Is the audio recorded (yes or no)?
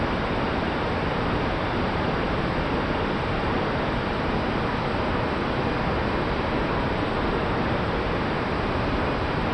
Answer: no